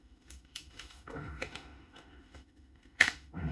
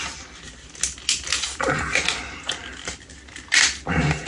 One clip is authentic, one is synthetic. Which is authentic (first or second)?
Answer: second